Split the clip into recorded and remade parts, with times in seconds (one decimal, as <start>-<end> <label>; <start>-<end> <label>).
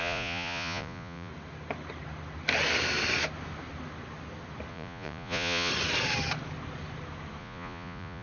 0.0-1.3 remade; 1.3-4.7 recorded; 4.7-5.7 remade; 5.7-7.4 recorded; 7.4-8.2 remade